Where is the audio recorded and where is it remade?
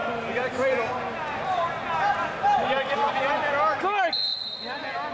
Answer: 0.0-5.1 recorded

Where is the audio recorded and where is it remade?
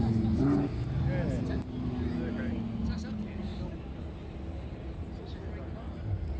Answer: 0.0-6.4 recorded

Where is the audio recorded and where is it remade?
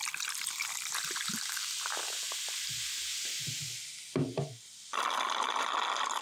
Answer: 0.0-6.2 recorded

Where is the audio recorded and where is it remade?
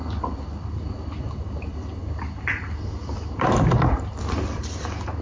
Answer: 0.0-5.2 recorded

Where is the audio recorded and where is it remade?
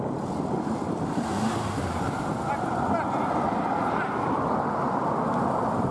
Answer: 0.0-1.3 remade; 1.3-4.8 recorded; 4.8-5.9 remade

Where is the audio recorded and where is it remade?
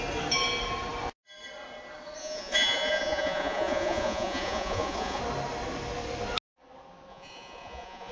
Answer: 0.0-2.2 recorded; 2.2-5.2 remade; 5.2-7.1 recorded; 7.1-8.1 remade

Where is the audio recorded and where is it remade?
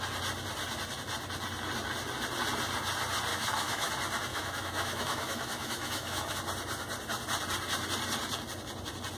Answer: 0.0-3.3 recorded; 3.3-3.9 remade; 3.9-4.3 recorded; 4.3-6.4 remade; 6.4-9.2 recorded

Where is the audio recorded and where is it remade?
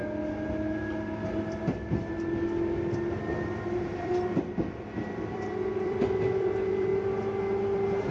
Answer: 0.0-3.3 recorded; 3.3-6.9 remade; 6.9-8.1 recorded